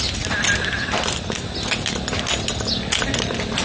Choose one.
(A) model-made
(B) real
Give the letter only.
B